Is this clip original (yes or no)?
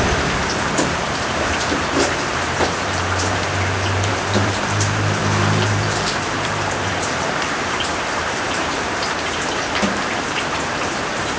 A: no